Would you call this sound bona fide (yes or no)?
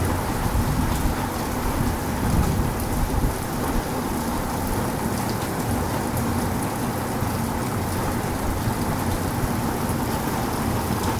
yes